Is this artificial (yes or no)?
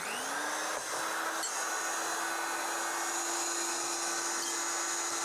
no